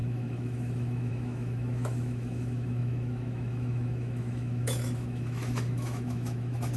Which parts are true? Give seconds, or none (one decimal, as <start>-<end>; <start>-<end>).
none